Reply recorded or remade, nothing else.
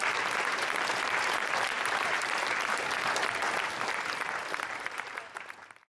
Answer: remade